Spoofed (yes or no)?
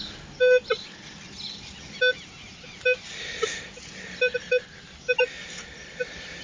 no